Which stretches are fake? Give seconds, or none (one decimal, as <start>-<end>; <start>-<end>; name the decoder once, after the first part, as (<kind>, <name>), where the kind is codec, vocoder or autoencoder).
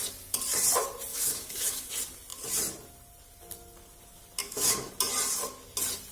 1.1-1.9 (autoencoder, DAC-VAE); 4.4-4.9